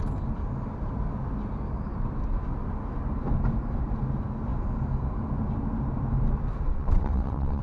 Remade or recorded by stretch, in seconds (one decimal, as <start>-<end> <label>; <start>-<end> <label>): 0.0-6.7 recorded; 6.7-7.6 remade